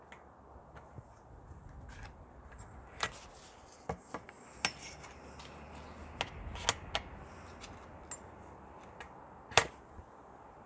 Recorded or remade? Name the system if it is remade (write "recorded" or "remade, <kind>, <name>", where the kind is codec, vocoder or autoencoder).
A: recorded